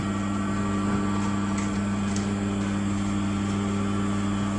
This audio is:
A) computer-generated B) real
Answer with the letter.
B